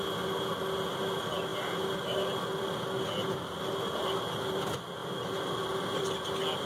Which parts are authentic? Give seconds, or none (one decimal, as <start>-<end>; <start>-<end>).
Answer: 0.0-5.0; 6.1-6.7